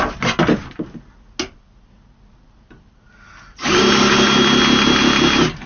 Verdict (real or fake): real